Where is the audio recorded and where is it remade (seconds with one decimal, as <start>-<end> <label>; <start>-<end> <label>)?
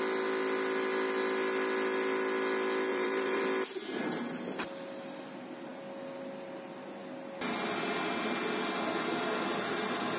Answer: 0.0-2.9 recorded; 2.9-3.4 remade; 3.4-10.2 recorded